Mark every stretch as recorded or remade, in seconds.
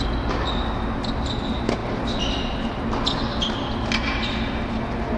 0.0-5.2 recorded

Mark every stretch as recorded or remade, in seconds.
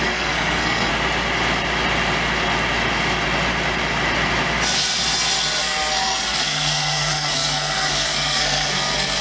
0.0-0.9 remade; 0.9-5.6 recorded; 5.6-9.2 remade